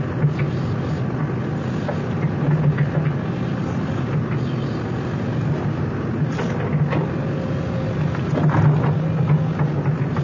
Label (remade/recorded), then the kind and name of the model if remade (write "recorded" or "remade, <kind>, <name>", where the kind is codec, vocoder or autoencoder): recorded